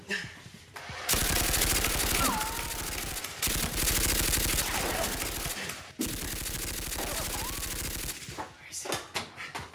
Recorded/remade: recorded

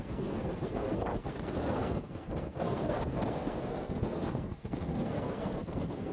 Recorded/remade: remade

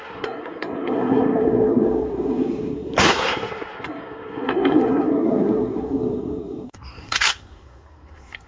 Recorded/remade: remade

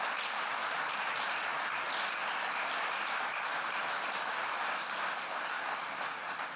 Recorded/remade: recorded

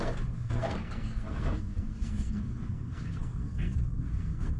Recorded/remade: remade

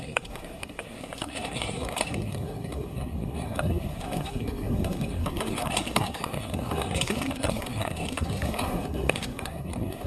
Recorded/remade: remade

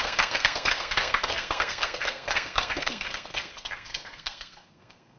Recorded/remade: remade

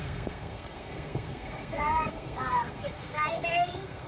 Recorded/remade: remade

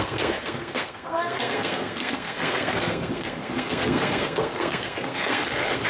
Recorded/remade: remade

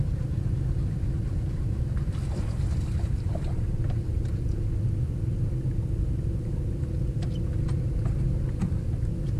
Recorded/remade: recorded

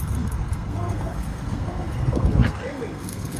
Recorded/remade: remade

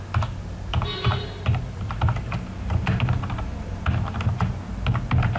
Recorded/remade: recorded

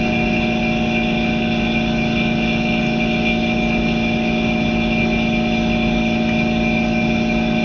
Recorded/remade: recorded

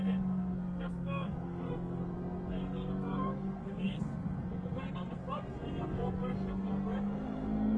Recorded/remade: remade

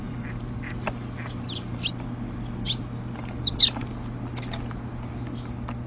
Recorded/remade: recorded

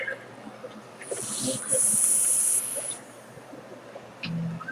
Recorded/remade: recorded